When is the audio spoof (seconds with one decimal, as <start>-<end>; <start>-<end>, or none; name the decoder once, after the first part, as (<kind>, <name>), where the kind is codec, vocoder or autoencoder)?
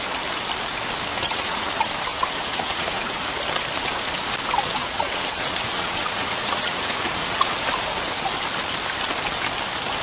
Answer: 1.1-1.7 (vocoder, Vocos); 2.1-3.3; 4.8-7.5